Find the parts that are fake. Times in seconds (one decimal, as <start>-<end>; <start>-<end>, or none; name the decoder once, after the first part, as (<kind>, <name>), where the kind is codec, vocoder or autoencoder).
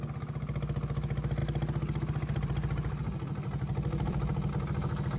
1.4-4.5 (vocoder, BigVGAN v2)